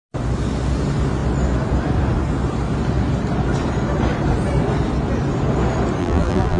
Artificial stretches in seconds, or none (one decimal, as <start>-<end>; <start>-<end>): 6.0-6.6